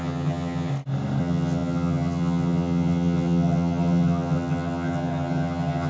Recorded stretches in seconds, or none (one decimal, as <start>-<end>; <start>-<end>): 0.7-1.2